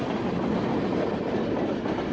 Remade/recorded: recorded